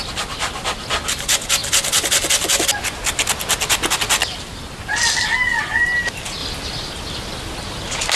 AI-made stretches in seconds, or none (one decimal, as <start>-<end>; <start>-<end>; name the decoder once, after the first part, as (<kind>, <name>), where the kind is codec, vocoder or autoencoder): none